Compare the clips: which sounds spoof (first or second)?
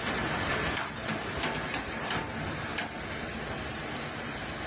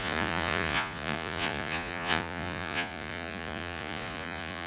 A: second